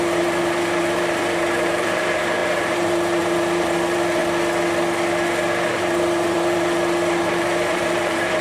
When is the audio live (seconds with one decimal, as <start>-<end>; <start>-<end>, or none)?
4.2-5.7